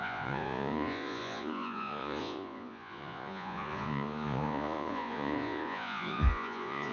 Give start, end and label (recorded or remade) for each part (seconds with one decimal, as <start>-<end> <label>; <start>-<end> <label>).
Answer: 0.0-6.9 remade